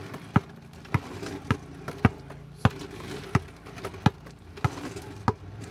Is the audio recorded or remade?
recorded